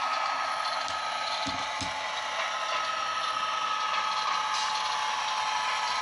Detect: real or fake real